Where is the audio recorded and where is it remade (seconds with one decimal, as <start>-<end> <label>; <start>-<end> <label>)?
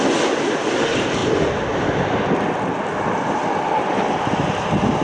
0.0-5.0 recorded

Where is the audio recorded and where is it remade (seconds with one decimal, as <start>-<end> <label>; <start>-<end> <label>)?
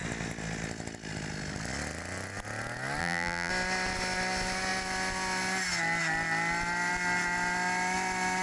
0.0-3.0 recorded; 3.0-3.5 remade; 3.5-8.4 recorded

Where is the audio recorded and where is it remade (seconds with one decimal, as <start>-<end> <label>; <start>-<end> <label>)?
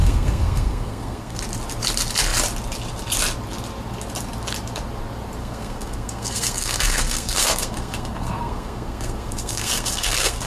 0.0-1.4 remade; 1.4-5.4 recorded; 5.4-10.5 remade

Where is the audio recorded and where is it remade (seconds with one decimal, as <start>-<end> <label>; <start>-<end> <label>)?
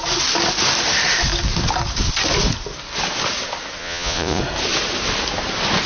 0.0-3.8 recorded; 3.8-4.4 remade; 4.4-5.9 recorded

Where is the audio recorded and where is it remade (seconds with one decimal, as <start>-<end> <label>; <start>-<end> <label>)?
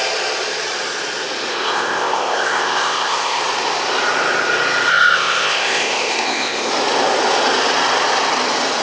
0.0-1.5 recorded; 1.5-3.4 remade; 3.4-4.9 recorded; 4.9-6.7 remade; 6.7-8.8 recorded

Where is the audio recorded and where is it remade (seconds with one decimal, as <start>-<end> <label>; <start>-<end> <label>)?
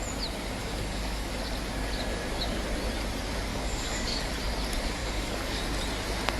0.0-0.6 recorded; 0.6-1.3 remade; 1.3-3.5 recorded; 3.5-4.3 remade; 4.3-5.0 recorded; 5.0-5.6 remade; 5.6-6.4 recorded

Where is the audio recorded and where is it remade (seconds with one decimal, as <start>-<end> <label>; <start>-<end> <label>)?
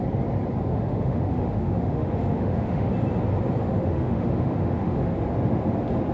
0.0-0.7 recorded; 0.7-2.9 remade; 2.9-3.7 recorded; 3.7-5.1 remade; 5.1-6.1 recorded